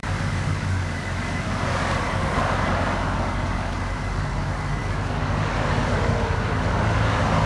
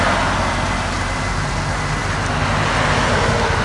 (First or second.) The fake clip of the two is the first